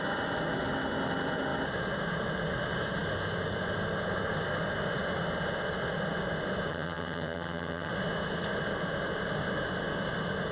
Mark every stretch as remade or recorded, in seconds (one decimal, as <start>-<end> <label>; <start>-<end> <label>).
0.0-6.7 recorded; 6.7-7.9 remade; 7.9-10.5 recorded